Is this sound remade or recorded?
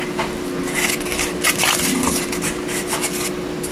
recorded